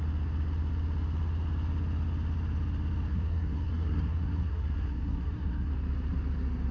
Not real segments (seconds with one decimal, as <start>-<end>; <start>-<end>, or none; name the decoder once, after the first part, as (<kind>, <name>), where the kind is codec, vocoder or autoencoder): 3.1-5.7 (codec, SNAC)